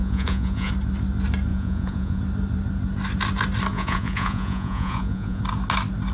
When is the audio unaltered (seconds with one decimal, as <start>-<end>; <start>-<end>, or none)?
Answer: 0.7-1.5; 2.2-3.7; 5.4-6.1